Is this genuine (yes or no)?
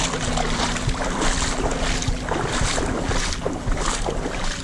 yes